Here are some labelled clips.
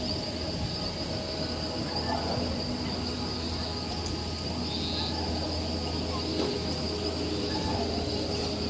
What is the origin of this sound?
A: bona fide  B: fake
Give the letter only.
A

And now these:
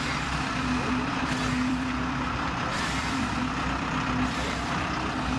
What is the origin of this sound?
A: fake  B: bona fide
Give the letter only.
A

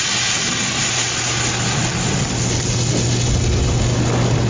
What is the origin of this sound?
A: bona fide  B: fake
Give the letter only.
A